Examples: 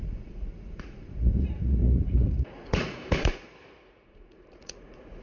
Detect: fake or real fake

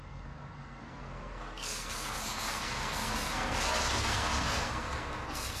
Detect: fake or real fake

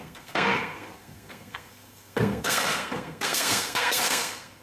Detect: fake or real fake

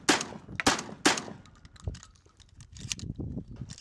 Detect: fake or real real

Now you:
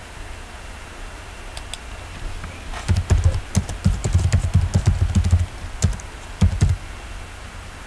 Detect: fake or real real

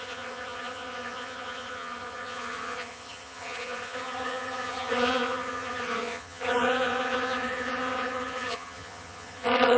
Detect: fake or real fake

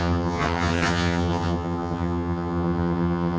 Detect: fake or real fake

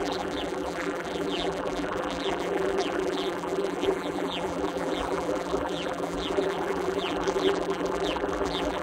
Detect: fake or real fake